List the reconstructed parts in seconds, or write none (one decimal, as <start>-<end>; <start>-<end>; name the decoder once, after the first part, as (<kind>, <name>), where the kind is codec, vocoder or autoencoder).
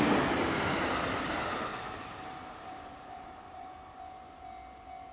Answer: 1.7-3.7 (vocoder, BigVGAN v2)